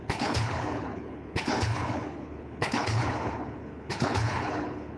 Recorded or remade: remade